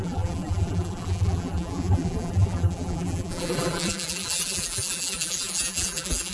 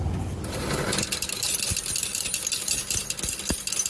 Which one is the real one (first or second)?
second